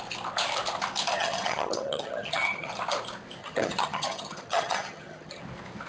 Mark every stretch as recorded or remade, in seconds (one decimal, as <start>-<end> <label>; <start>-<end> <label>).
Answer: 0.0-1.2 recorded; 1.2-2.7 remade; 2.7-3.4 recorded; 3.4-5.4 remade; 5.4-5.9 recorded